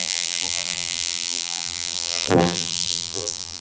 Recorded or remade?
remade